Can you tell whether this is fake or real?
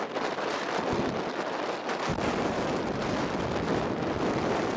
real